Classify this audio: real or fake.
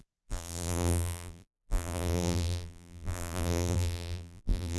fake